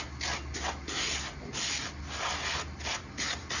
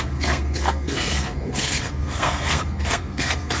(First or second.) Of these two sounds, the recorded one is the first